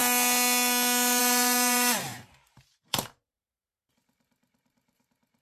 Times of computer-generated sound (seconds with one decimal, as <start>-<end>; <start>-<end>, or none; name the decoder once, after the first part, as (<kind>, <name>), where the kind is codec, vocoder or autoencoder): 1.2-5.4 (vocoder, BigVGAN v2)